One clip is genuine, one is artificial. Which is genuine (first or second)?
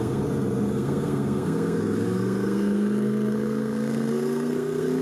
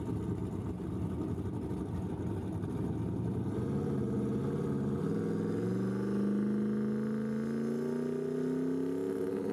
second